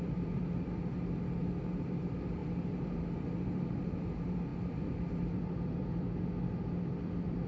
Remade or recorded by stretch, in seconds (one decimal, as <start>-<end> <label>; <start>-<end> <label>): 0.0-7.5 remade